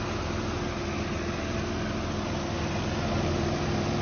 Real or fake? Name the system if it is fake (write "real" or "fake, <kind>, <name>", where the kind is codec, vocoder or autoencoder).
real